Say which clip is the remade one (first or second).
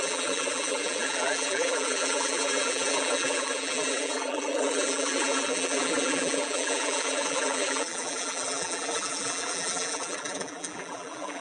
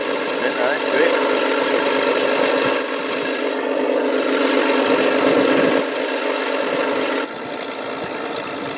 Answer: first